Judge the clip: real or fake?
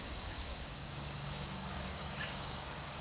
fake